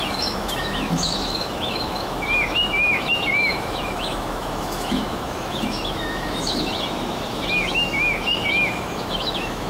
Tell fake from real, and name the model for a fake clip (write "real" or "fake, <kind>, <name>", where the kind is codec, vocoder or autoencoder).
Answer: fake, autoencoder, DAC-VAE